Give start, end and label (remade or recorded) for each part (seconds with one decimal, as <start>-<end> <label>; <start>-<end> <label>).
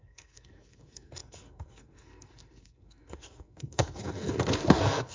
0.0-5.1 remade